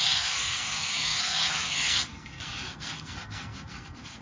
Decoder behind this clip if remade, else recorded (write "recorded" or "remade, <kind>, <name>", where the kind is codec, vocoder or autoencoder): remade, codec, SNAC